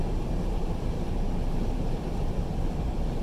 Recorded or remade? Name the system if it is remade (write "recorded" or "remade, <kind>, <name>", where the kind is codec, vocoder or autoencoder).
remade, vocoder, BigVGAN v2